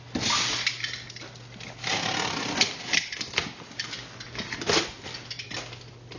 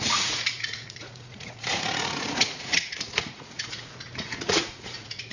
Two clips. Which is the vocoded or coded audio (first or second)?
second